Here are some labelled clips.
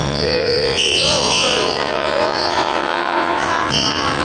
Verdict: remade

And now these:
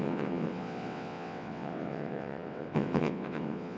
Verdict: remade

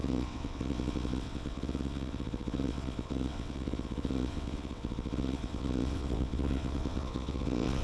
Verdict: remade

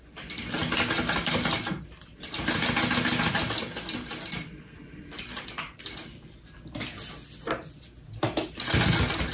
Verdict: recorded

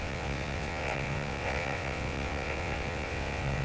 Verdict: remade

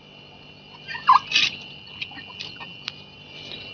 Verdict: recorded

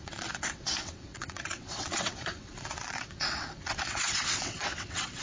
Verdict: remade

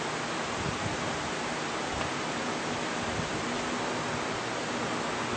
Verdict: recorded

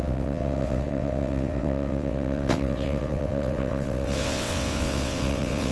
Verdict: remade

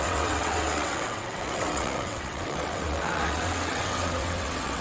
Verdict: remade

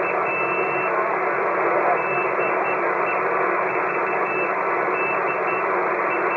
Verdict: recorded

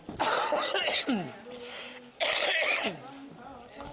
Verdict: recorded